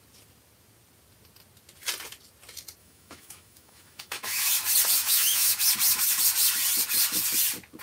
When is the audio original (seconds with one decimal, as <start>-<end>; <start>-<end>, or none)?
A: 0.0-2.8; 4.5-5.0; 5.6-7.8